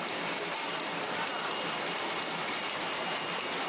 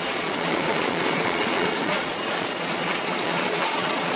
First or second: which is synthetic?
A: second